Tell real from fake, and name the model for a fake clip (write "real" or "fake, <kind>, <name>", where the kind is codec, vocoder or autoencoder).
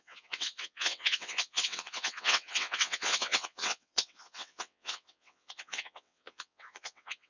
fake, vocoder, WaveNeXt